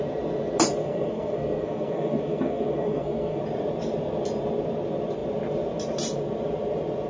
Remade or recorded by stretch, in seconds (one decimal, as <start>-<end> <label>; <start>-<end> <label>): 0.0-0.8 recorded; 0.8-3.4 remade; 3.4-7.1 recorded